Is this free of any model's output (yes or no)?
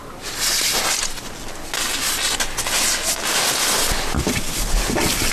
yes